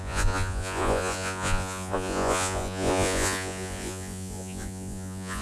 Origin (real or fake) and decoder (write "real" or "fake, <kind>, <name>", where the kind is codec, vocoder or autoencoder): fake, vocoder, Vocos